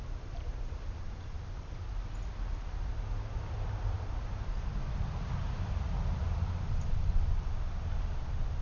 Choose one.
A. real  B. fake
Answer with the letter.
A